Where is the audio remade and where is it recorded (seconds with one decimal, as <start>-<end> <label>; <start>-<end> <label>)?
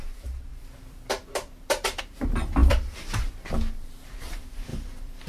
0.0-0.5 recorded; 0.5-2.0 remade; 2.0-2.6 recorded; 2.6-3.3 remade; 3.3-4.7 recorded; 4.7-5.3 remade